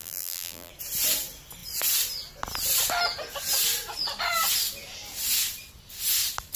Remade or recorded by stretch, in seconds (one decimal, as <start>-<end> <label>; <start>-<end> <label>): 0.0-0.7 remade; 0.7-6.6 recorded

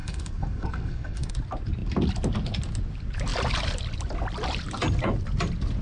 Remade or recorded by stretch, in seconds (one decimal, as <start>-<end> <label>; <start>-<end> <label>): 0.0-1.3 remade; 1.3-5.8 recorded

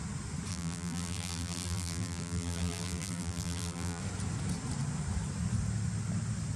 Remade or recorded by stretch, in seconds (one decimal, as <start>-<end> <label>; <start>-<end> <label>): 0.0-0.5 recorded; 0.5-4.0 remade; 4.0-6.6 recorded

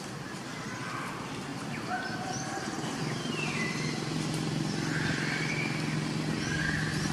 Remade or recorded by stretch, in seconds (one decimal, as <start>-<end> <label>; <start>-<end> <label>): 0.0-7.1 remade

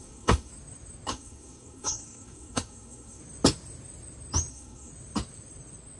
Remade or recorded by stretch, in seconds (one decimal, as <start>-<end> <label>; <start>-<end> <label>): 0.0-0.5 remade; 0.5-1.1 recorded; 1.1-3.2 remade; 3.2-4.5 recorded; 4.5-4.9 remade; 4.9-6.0 recorded

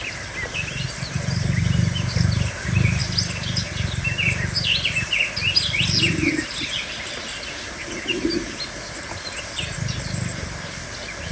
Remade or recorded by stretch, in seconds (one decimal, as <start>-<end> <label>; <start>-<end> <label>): 0.0-11.3 recorded